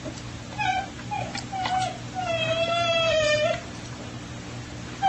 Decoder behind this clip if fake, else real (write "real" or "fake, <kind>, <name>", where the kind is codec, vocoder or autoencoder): fake, vocoder, BigVGAN v2